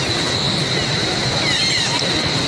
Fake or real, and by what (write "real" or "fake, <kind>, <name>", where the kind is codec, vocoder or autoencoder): real